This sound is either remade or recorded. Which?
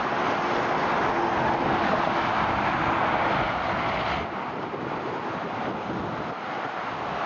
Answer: recorded